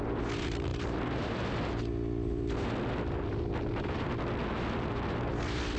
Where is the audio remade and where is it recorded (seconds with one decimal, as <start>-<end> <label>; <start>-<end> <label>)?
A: 0.0-5.8 recorded